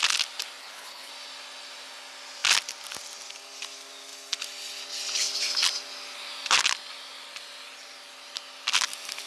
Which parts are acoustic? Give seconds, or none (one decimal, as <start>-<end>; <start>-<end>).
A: 0.0-0.6; 1.1-9.3